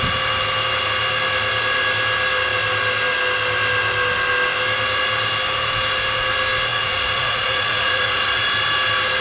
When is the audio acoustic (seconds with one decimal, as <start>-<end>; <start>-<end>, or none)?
0.0-6.7; 8.4-9.2